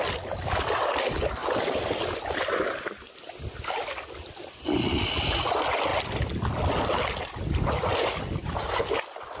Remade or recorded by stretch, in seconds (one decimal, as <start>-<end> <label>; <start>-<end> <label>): 0.0-9.4 recorded